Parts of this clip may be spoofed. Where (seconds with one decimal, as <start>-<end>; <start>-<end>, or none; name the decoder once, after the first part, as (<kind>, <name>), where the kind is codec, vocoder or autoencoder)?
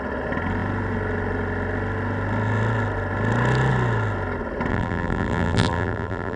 4.7-6.4 (vocoder, BigVGAN v2)